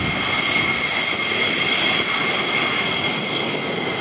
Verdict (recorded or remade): recorded